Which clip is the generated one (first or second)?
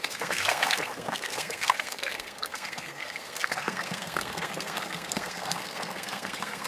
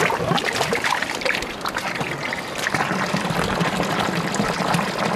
first